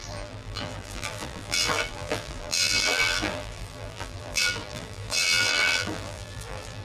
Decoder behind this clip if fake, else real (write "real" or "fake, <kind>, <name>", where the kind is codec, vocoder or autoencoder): fake, vocoder, BigVGAN v2